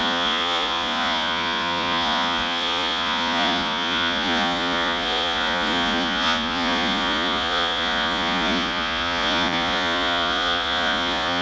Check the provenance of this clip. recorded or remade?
remade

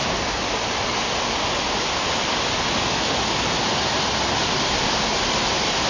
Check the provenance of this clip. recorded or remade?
recorded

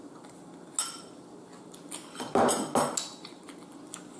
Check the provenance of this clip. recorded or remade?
recorded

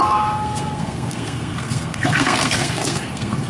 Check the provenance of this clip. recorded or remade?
remade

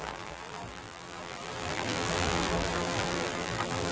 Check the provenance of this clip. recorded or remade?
remade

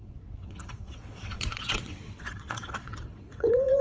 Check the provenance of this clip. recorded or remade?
remade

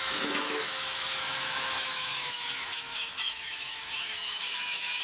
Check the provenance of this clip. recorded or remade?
remade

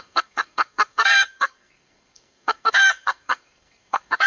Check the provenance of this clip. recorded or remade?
remade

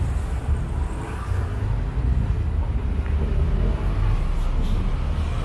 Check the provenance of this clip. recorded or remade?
recorded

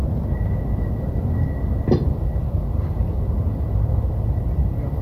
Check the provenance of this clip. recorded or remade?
recorded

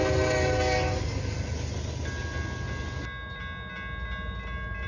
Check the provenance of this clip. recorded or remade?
recorded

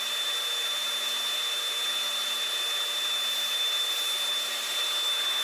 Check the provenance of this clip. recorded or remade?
remade